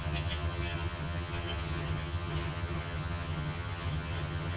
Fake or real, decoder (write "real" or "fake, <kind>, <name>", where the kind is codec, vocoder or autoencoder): fake, vocoder, HiFi-GAN